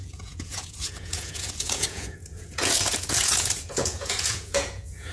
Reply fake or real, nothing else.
fake